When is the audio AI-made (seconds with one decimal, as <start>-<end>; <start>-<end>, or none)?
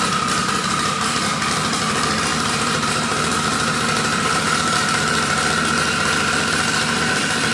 0.4-1.3; 2.3-5.0